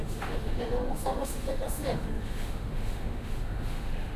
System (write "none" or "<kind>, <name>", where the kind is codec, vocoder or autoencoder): autoencoder, DAC-VAE